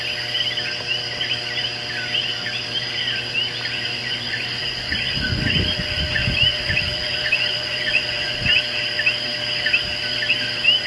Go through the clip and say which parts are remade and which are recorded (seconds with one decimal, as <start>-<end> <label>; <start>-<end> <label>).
0.0-4.0 recorded; 4.0-8.6 remade; 8.6-10.9 recorded